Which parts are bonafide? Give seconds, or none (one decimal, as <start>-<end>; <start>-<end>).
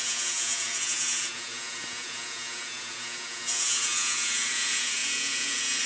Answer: none